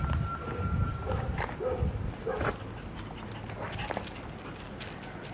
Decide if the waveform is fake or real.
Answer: real